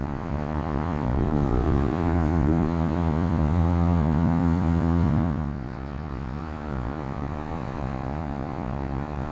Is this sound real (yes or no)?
no